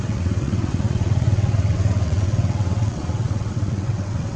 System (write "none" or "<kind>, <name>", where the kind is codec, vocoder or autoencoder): vocoder, WaveNeXt